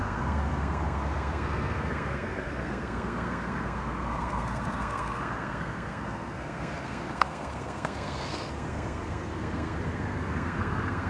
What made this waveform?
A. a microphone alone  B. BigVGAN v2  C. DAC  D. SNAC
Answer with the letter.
D